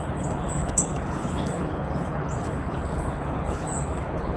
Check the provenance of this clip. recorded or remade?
remade